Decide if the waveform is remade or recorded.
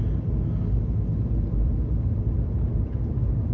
recorded